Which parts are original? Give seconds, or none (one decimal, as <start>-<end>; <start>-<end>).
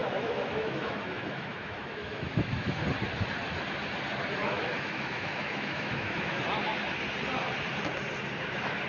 2.8-4.4; 6.4-8.9